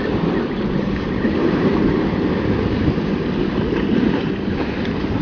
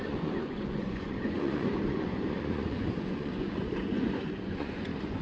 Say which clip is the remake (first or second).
second